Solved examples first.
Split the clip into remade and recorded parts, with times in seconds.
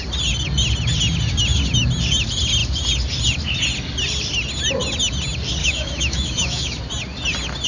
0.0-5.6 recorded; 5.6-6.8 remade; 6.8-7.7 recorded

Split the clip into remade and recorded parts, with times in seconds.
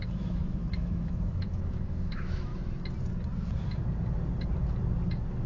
0.0-2.5 remade; 2.5-5.5 recorded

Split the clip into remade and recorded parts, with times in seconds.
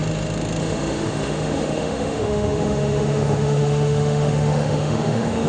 0.0-0.6 recorded; 0.6-5.5 remade